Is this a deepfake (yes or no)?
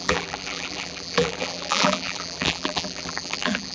yes